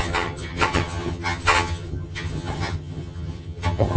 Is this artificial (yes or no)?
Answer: yes